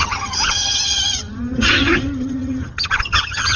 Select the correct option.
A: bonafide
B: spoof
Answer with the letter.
B